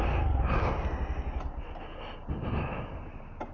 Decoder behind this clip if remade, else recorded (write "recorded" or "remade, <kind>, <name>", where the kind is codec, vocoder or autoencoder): recorded